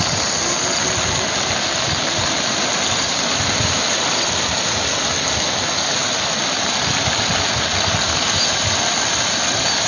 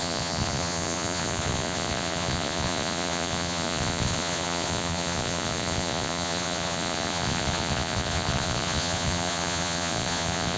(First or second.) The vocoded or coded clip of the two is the second